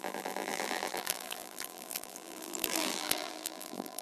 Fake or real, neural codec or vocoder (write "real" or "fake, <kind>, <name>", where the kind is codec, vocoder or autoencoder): fake, vocoder, BigVGAN v2